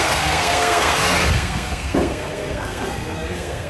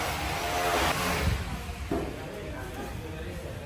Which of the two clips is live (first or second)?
second